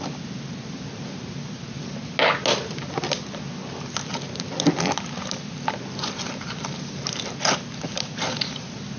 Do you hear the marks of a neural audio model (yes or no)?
no